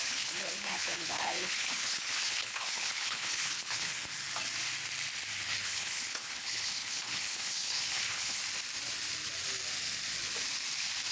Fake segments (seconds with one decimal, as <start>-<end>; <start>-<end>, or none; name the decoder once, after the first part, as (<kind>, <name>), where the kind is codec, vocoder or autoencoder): 0.0-4.1 (codec, HILCodec); 5.5-8.4